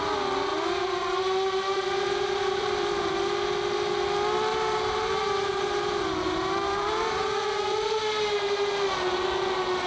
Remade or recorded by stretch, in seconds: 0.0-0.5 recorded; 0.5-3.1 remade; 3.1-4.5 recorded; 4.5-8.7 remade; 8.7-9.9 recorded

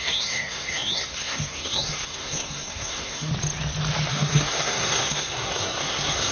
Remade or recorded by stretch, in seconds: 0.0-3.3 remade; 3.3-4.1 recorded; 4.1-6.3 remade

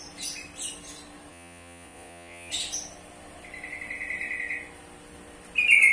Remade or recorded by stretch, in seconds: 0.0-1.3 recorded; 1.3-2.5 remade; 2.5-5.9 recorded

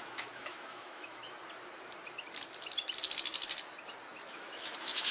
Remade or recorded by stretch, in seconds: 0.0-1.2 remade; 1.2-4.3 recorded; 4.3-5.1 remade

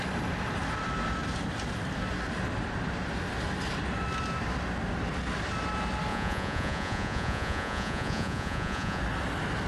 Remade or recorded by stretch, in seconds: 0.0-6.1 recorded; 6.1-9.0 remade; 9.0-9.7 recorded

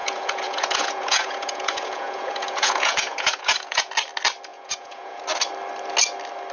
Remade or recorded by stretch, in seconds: 0.0-3.9 remade; 3.9-4.5 recorded; 4.5-5.2 remade; 5.2-6.5 recorded

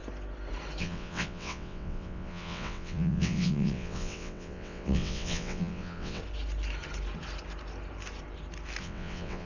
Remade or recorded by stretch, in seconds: 0.0-0.8 recorded; 0.8-6.2 remade; 6.2-8.8 recorded; 8.8-9.5 remade

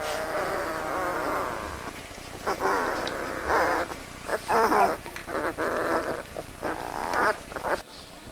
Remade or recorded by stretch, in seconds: 0.0-1.1 recorded; 1.1-1.7 remade; 1.7-4.3 recorded; 4.3-4.8 remade; 4.8-5.2 recorded; 5.2-6.0 remade; 6.0-7.0 recorded; 7.0-7.8 remade; 7.8-8.3 recorded